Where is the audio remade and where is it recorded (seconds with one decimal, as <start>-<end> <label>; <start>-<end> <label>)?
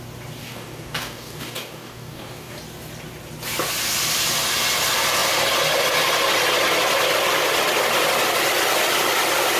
0.0-0.4 recorded; 0.4-2.6 remade; 2.6-9.6 recorded